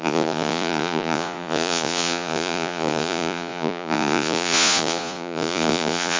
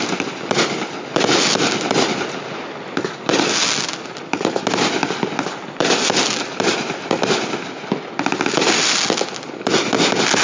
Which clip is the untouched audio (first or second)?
second